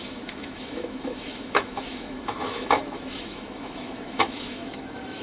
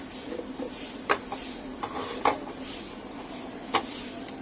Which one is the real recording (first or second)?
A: second